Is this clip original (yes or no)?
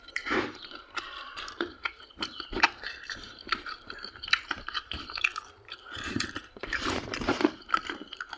no